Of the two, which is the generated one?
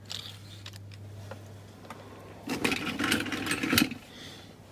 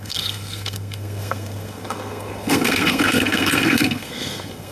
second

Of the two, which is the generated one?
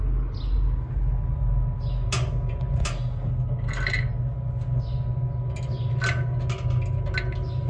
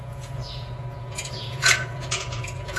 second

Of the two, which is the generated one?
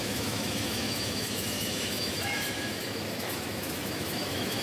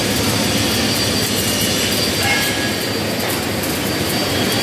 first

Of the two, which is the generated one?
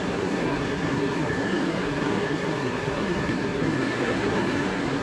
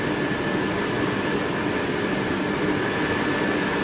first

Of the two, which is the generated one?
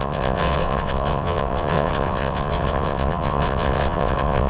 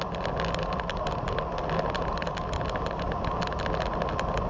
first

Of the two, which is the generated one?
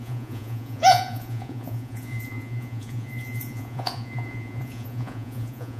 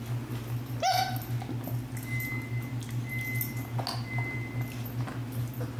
first